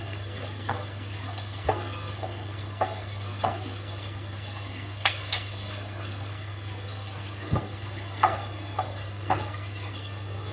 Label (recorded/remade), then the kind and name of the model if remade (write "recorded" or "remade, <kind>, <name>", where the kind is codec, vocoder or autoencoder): remade, codec, SNAC